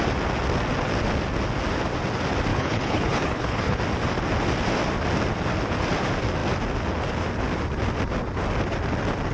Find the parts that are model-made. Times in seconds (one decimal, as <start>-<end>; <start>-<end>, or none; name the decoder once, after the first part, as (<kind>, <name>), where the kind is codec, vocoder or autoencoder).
2.5-3.8 (codec, HILCodec)